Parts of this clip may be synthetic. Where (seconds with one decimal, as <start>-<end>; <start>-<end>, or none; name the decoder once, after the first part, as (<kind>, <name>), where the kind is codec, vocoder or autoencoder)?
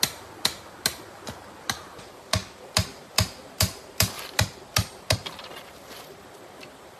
none